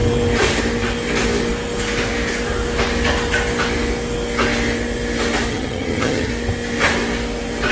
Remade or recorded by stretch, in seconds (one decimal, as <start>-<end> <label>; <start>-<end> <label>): 0.0-5.5 recorded; 5.5-6.3 remade; 6.3-7.7 recorded